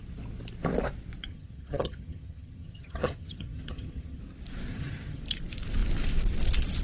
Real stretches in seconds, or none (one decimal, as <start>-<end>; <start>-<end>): 0.0-1.3; 4.2-4.7; 5.2-6.8